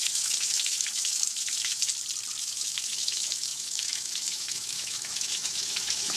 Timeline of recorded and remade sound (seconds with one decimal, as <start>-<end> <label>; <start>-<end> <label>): 0.0-1.9 remade; 1.9-2.4 recorded; 2.4-6.2 remade